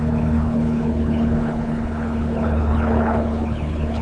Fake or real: fake